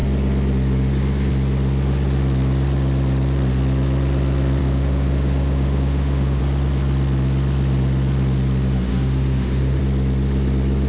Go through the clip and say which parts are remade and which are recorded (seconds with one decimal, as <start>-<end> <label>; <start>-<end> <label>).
0.0-4.6 recorded; 4.6-6.4 remade; 6.4-8.9 recorded; 8.9-9.8 remade; 9.8-10.9 recorded